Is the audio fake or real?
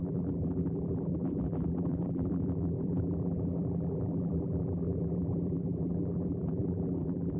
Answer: fake